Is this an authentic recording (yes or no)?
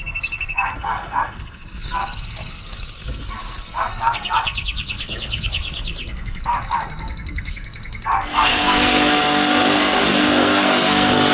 no